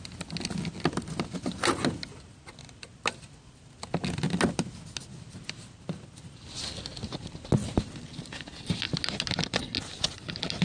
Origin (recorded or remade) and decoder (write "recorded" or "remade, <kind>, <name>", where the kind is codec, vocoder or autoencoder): recorded